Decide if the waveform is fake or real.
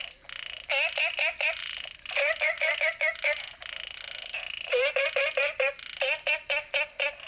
real